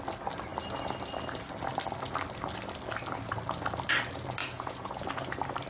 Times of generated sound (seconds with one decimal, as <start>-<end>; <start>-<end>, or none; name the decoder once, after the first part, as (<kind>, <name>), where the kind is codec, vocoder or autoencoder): 4.4-5.0 (vocoder, Vocos)